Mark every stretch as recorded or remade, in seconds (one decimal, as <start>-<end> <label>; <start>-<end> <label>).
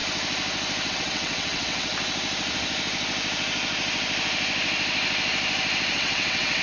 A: 0.0-0.9 recorded; 0.9-1.9 remade; 1.9-5.9 recorded; 5.9-6.6 remade